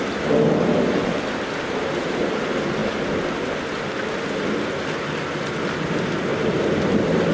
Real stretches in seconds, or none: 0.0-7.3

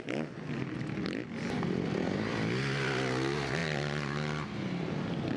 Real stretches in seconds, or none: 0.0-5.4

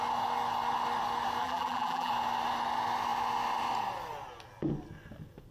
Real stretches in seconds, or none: 0.0-1.4; 2.1-5.5

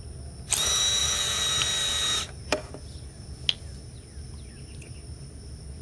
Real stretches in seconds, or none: 0.0-5.8